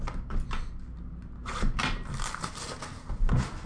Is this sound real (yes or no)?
yes